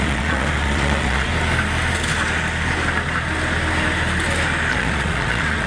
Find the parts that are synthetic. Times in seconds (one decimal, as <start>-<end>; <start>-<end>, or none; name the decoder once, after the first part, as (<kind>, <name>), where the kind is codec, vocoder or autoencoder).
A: 0.0-1.3 (vocoder, Vocos); 4.7-5.7